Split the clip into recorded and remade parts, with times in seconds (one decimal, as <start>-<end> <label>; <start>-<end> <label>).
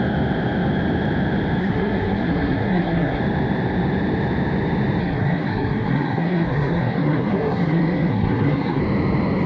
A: 0.0-1.6 recorded; 1.6-3.2 remade; 3.2-5.0 recorded; 5.0-8.8 remade; 8.8-9.5 recorded